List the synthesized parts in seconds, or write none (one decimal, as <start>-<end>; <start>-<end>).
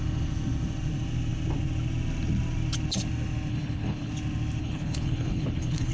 3.5-4.1; 4.6-5.9